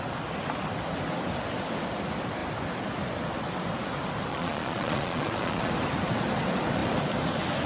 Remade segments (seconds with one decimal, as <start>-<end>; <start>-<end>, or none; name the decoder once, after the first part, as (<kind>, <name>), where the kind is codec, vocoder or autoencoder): 4.3-5.7 (vocoder, Vocos)